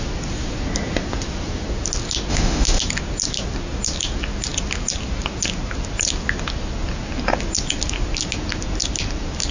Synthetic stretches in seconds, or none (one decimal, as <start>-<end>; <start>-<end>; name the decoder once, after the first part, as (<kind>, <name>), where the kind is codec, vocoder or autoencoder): 2.3-2.8 (autoencoder, DAC-VAE)